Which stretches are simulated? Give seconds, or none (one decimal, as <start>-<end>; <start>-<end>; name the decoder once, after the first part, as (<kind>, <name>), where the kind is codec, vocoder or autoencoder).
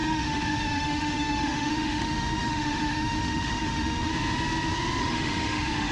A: 0.0-4.1 (autoencoder, DAC-VAE); 5.0-5.9